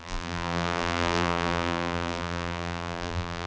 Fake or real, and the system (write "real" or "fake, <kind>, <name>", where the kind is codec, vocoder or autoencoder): fake, vocoder, BigVGAN v2